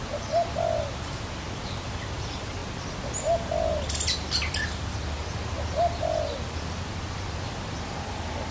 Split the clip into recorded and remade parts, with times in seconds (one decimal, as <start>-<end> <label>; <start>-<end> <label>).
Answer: 0.0-8.5 recorded